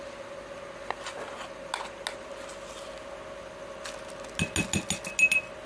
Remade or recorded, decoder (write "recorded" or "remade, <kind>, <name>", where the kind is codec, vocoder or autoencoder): recorded